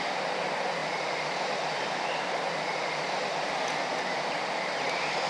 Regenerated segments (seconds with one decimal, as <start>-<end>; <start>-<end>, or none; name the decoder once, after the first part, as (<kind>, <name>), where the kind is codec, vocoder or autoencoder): none